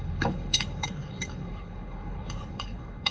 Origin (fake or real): fake